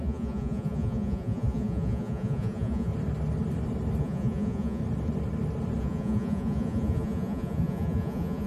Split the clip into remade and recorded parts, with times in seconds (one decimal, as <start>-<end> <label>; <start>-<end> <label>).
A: 0.0-2.9 remade; 2.9-4.0 recorded; 4.0-4.8 remade; 4.8-5.8 recorded; 5.8-8.5 remade